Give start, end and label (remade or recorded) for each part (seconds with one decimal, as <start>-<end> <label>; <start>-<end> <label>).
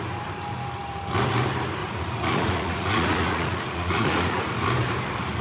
0.0-1.8 recorded; 1.8-4.4 remade; 4.4-5.4 recorded